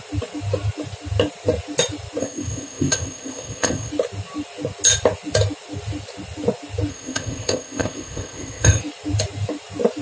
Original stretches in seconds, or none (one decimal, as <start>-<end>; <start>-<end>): 0.0-2.2; 3.9-6.9; 8.8-10.0